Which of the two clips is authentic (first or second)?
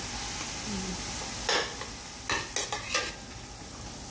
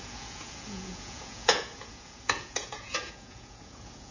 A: first